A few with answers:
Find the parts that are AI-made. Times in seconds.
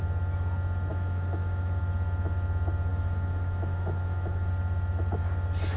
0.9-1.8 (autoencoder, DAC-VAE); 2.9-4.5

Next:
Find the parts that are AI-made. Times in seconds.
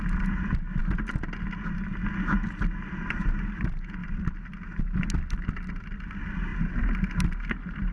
none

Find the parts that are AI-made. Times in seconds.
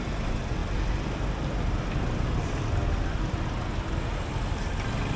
none